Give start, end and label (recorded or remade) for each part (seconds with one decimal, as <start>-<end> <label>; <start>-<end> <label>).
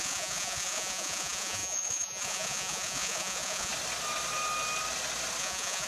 0.0-3.7 remade; 3.7-5.4 recorded; 5.4-5.9 remade